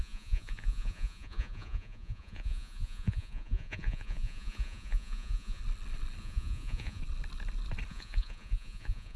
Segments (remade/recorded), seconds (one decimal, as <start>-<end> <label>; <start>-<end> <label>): 0.0-5.6 remade; 5.6-6.2 recorded; 6.2-7.0 remade; 7.0-7.9 recorded; 7.9-9.2 remade